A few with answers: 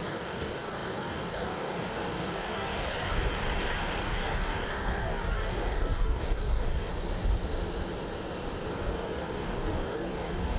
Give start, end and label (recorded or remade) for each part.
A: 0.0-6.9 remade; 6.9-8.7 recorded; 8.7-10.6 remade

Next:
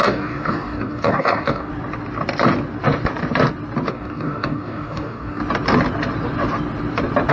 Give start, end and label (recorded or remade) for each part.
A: 0.0-1.7 remade; 1.7-3.9 recorded; 3.9-5.4 remade; 5.4-7.3 recorded

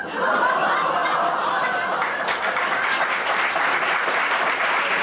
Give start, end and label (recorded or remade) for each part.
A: 0.0-5.0 recorded

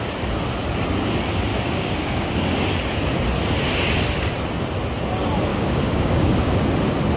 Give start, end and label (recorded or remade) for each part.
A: 0.0-1.5 recorded; 1.5-2.7 remade; 2.7-5.5 recorded; 5.5-6.6 remade; 6.6-7.2 recorded